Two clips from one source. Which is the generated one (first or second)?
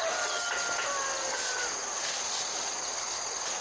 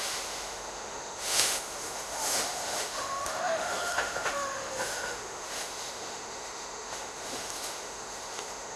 second